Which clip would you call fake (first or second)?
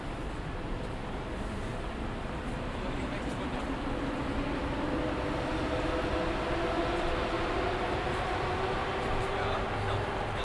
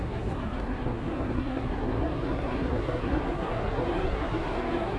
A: second